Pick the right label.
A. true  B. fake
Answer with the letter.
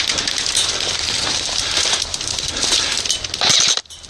A